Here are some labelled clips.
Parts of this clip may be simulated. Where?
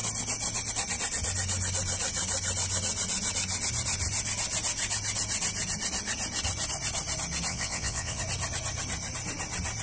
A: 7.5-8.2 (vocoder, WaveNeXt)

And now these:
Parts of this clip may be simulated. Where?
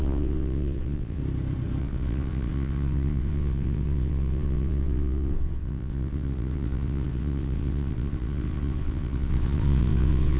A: 0.0-1.2 (vocoder, WaveNeXt); 1.8-10.4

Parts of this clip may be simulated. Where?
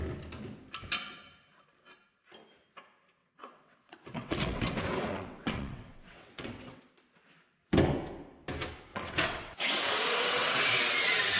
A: 3.2-6.8 (vocoder, WaveNeXt); 8.9-11.4